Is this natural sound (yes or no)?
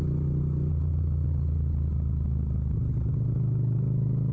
yes